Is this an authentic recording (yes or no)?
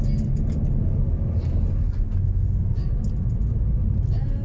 yes